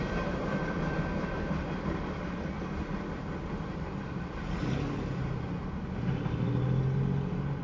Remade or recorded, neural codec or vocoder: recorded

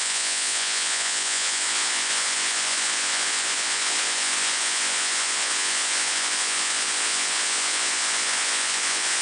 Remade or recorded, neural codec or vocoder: remade, vocoder, Vocos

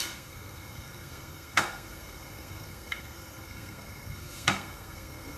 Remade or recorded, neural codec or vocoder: remade, codec, SNAC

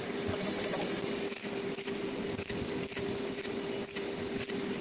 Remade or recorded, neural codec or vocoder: recorded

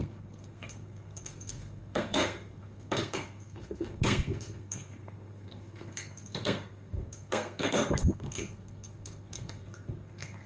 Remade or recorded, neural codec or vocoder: remade, codec, SNAC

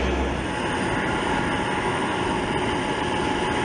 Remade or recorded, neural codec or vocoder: recorded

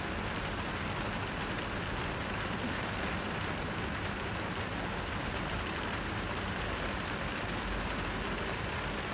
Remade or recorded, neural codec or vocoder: recorded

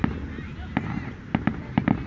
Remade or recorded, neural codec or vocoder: recorded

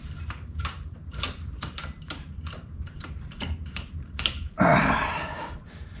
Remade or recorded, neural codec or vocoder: remade, vocoder, BigVGAN v2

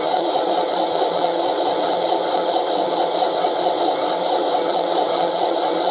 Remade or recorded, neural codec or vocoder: remade, vocoder, WaveNeXt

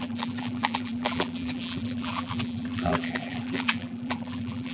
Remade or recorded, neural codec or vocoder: remade, vocoder, BigVGAN v2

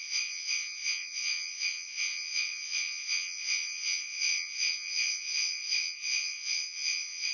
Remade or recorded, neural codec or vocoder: remade, vocoder, Vocos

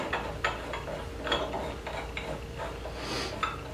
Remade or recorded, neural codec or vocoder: recorded